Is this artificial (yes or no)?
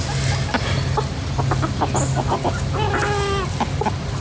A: no